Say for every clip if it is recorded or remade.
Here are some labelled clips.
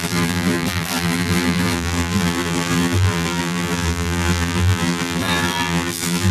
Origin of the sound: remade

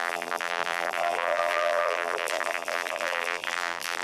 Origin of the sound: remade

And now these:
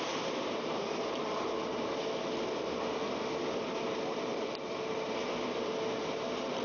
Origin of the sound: recorded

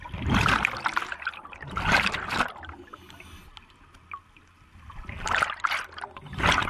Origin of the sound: recorded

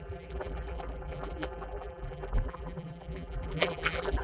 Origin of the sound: remade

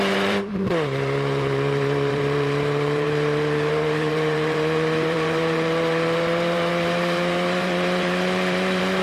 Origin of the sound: remade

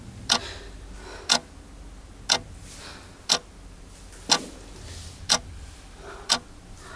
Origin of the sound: recorded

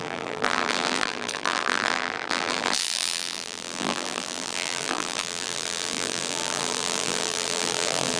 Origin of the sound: remade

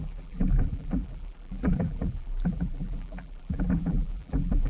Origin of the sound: remade